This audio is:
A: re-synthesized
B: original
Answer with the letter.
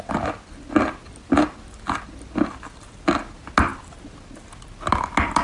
B